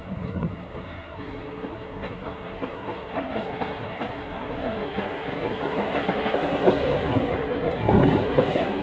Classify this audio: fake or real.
fake